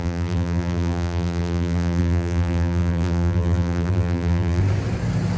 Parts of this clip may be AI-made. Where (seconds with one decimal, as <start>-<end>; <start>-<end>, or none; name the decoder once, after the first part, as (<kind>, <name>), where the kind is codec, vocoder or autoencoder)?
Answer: 0.0-4.6 (vocoder, BigVGAN v2)

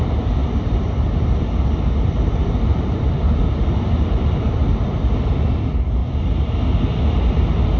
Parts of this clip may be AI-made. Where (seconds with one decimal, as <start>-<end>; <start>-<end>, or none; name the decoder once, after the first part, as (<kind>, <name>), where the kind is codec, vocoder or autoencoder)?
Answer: 0.4-1.3 (vocoder, BigVGAN v2); 2.7-4.5; 6.0-6.6

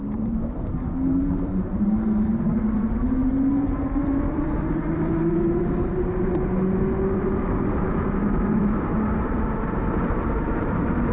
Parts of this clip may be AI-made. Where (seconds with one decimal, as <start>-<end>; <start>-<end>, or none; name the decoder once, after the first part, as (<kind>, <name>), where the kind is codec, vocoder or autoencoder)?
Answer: 0.0-3.2 (vocoder, BigVGAN v2); 7.2-11.1

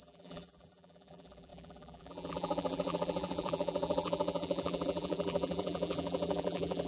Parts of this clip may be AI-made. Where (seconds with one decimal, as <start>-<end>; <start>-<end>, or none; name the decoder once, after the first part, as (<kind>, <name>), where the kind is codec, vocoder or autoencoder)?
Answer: 0.0-6.9 (vocoder, BigVGAN v2)

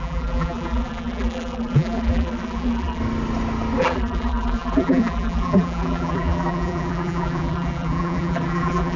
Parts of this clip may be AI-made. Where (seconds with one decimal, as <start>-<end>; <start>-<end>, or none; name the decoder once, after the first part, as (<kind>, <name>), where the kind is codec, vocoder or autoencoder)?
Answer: 0.0-3.0 (vocoder, BigVGAN v2); 3.8-9.0

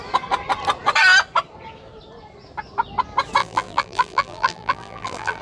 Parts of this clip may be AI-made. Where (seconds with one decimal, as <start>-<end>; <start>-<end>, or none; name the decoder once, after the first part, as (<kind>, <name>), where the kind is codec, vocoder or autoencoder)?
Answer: 3.4-5.4 (vocoder, BigVGAN v2)

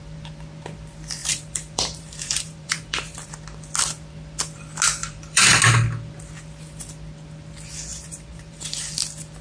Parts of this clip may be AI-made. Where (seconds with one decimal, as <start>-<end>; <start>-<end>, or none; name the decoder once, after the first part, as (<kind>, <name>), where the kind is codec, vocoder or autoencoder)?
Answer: 1.2-3.3 (vocoder, BigVGAN v2); 5.0-5.6; 7.9-8.9